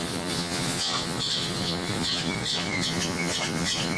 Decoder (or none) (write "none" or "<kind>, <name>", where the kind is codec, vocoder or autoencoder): vocoder, Vocos